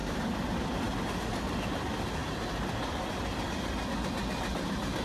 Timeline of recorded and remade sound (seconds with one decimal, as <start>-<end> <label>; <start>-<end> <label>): 0.0-5.0 recorded